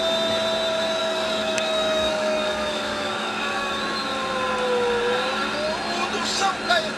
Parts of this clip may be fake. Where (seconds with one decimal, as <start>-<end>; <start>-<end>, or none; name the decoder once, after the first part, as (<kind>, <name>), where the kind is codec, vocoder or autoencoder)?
1.0-3.8 (codec, DAC)